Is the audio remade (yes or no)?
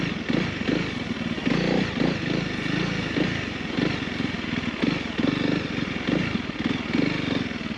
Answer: no